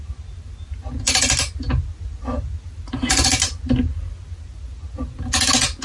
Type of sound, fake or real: real